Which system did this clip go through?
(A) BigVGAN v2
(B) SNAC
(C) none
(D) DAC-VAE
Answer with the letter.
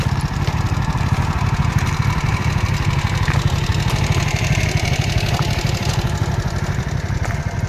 C